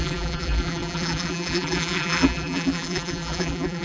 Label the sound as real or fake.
fake